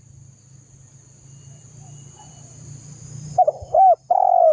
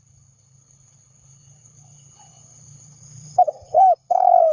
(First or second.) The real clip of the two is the first